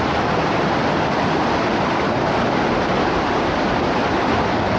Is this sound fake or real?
real